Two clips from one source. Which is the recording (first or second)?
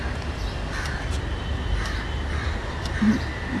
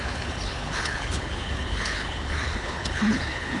first